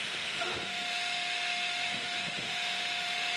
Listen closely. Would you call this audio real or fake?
fake